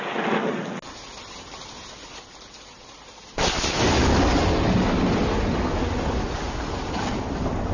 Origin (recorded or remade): recorded